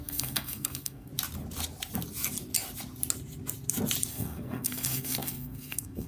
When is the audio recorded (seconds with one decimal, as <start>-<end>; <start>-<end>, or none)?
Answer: 1.1-4.1